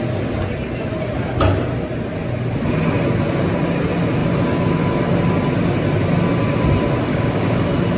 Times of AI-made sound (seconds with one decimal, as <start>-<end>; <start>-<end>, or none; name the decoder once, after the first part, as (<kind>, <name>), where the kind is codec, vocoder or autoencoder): 7.1-7.6 (codec, DAC)